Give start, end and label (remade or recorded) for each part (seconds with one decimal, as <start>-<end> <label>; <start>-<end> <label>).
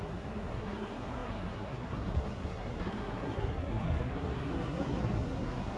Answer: 0.0-5.8 remade